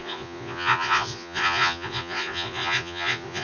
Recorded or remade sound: remade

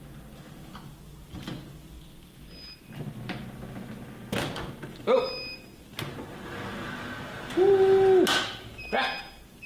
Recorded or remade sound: recorded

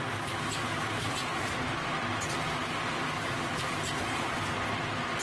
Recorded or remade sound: recorded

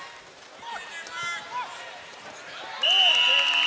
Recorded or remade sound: recorded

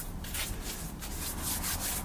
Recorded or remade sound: recorded